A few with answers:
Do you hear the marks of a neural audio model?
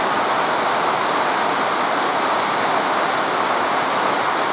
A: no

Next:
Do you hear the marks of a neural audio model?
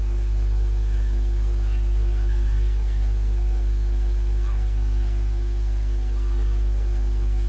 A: yes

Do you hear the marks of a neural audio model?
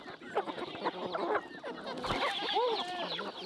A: no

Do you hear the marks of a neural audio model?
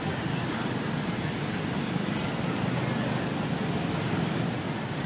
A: no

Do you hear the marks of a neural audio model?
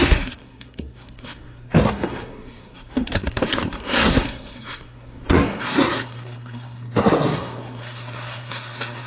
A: yes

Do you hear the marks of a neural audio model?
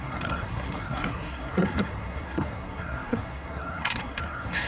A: yes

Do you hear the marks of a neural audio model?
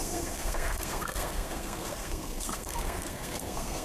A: yes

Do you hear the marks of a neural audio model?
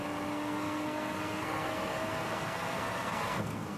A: yes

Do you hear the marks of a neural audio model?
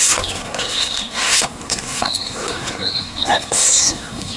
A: yes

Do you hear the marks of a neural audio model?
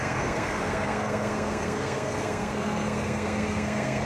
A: yes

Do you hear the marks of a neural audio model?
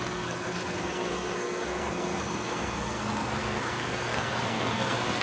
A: yes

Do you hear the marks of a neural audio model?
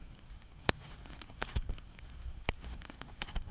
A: yes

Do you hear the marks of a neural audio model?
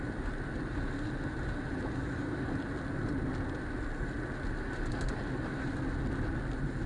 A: no